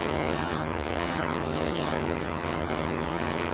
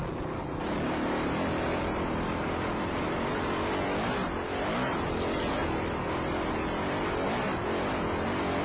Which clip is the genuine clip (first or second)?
second